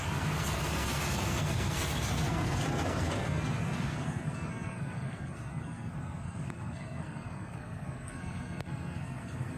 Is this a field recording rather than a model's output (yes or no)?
no